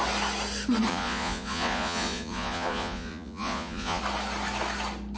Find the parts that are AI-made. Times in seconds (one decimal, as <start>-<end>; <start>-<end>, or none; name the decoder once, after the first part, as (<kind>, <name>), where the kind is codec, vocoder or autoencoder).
0.9-4.0 (vocoder, Vocos)